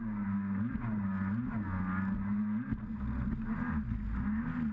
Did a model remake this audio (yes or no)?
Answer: no